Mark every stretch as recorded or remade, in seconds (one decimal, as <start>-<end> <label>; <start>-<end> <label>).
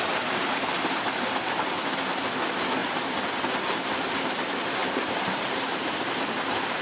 0.0-4.8 recorded; 4.8-5.8 remade; 5.8-6.8 recorded